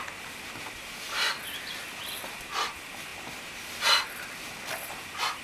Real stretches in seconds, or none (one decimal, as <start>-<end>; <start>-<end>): 0.0-5.4